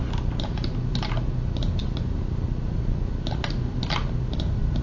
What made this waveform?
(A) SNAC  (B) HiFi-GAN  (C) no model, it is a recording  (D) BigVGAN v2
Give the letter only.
C